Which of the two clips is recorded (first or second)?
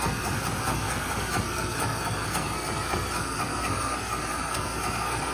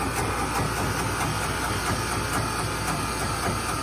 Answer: second